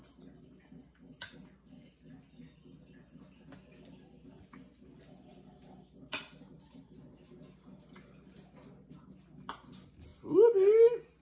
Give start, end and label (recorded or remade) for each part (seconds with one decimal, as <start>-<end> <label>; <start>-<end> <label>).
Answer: 0.0-11.2 recorded